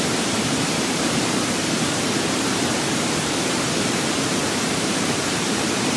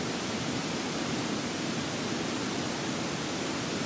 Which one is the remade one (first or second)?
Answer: first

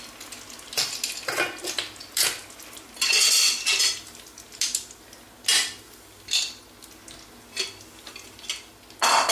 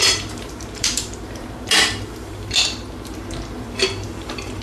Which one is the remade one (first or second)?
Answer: second